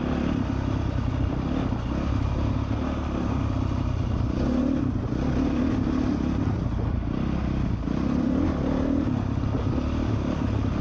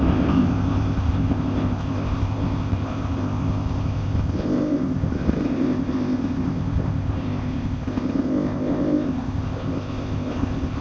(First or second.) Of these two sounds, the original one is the first